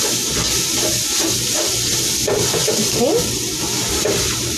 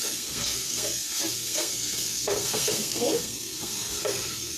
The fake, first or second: second